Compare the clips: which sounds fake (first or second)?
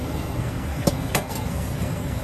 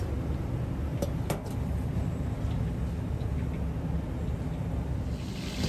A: first